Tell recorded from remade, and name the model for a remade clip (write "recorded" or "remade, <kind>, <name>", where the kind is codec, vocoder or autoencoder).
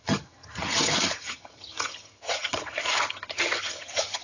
remade, vocoder, HiFi-GAN